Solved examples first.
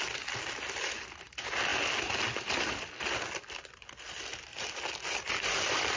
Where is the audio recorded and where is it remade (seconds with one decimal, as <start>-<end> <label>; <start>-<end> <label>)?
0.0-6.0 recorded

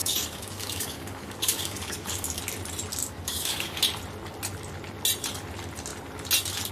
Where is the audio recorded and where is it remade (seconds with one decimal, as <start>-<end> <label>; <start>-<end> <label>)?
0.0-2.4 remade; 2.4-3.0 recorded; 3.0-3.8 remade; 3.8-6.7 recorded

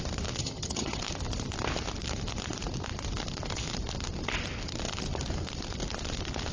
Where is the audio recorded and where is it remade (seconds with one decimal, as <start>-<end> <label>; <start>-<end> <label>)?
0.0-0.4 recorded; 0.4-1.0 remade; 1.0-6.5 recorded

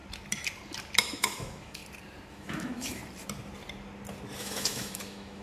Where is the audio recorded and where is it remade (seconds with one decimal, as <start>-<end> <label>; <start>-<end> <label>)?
0.0-1.0 recorded; 1.0-1.8 remade; 1.8-2.3 recorded; 2.3-3.0 remade; 3.0-4.4 recorded; 4.4-5.4 remade

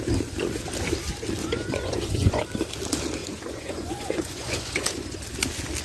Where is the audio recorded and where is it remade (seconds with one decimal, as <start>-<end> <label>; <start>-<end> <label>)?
0.0-1.4 recorded; 1.4-2.4 remade; 2.4-3.2 recorded; 3.2-5.2 remade; 5.2-5.8 recorded

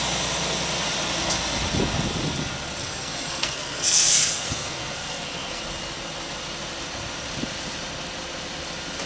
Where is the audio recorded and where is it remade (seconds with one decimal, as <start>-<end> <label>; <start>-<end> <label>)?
0.0-2.8 recorded; 2.8-5.6 remade; 5.6-9.1 recorded